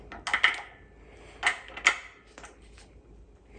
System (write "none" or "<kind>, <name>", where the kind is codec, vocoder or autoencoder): none